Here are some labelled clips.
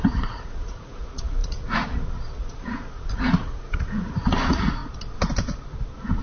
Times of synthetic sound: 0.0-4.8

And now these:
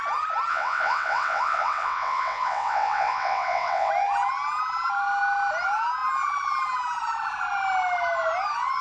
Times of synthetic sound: 0.5-3.9

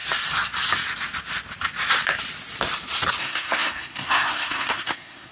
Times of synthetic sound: 3.2-5.3